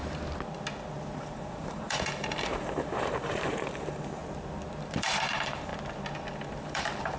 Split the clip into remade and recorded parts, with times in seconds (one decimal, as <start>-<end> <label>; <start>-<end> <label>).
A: 0.0-1.2 recorded; 1.2-4.2 remade; 4.2-5.0 recorded; 5.0-5.7 remade; 5.7-6.6 recorded; 6.6-7.2 remade